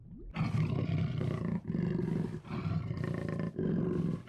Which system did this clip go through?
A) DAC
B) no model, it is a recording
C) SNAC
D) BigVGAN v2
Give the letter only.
B